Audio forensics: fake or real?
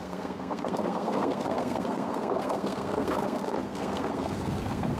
fake